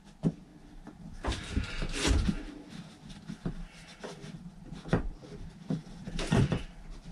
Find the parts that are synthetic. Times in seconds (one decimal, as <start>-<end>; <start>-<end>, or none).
0.0-0.5; 3.1-7.1